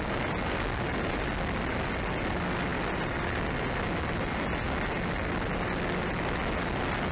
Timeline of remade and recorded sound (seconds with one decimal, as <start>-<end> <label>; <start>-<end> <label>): 0.0-7.1 recorded